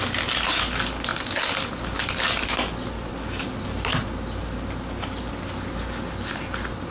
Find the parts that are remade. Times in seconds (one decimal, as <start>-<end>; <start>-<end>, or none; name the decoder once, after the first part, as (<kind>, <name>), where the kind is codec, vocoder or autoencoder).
none